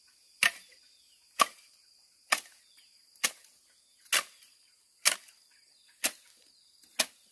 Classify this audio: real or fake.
real